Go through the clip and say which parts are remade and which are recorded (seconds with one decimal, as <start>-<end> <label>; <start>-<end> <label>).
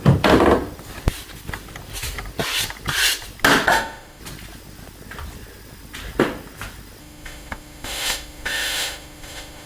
0.0-3.7 recorded; 3.7-4.2 remade; 4.2-7.0 recorded; 7.0-9.7 remade